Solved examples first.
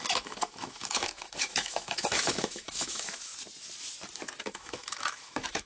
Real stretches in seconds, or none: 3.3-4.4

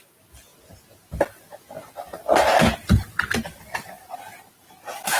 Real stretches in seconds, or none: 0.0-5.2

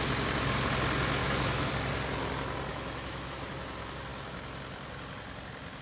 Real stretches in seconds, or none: 0.0-1.2; 1.7-2.7; 3.5-5.8

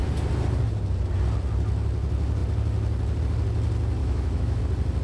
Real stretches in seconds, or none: 0.0-4.0; 4.6-5.0

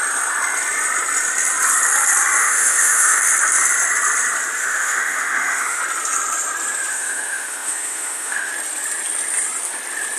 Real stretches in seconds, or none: 0.0-2.4; 3.2-4.6; 5.8-6.9; 8.5-10.2

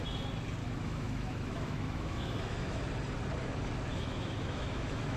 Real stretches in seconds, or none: 0.0-0.6; 2.8-3.9